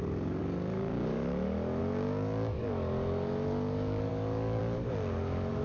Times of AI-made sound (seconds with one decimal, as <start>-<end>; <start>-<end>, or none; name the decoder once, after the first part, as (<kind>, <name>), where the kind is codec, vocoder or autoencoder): 0.0-5.6 (codec, DAC)